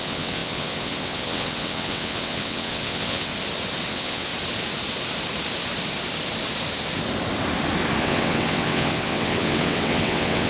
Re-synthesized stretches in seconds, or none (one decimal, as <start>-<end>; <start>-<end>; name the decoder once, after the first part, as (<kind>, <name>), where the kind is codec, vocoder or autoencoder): 0.0-3.3 (vocoder, WaveNeXt); 3.9-4.3; 8.0-10.5

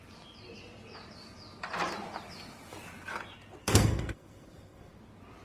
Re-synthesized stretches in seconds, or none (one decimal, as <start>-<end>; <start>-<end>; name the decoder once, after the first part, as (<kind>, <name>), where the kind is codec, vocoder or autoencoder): 3.6-4.9 (codec, SNAC)

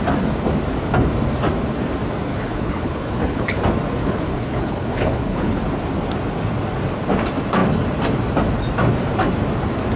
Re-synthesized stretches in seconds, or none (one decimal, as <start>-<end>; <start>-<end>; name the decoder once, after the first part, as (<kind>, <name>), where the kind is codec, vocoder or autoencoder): 2.3-3.6 (codec, HILCodec); 4.0-5.6